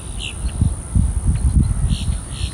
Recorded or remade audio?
recorded